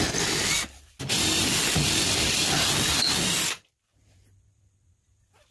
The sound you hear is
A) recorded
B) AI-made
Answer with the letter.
A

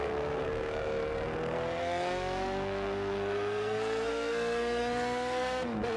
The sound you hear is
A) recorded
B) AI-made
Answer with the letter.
B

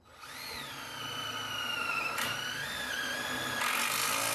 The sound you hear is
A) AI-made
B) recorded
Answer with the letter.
B